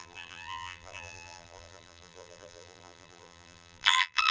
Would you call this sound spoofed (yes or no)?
yes